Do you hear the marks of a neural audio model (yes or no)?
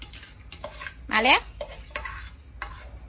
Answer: yes